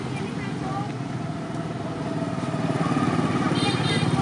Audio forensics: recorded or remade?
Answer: recorded